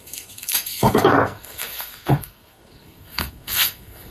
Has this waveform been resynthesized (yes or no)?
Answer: yes